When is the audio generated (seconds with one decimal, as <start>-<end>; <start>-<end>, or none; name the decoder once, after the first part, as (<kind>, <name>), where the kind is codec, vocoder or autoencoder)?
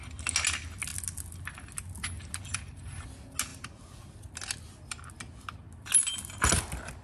none